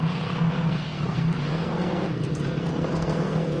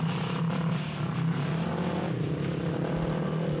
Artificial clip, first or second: first